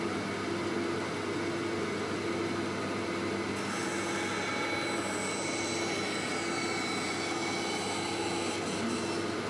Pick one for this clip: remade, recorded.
recorded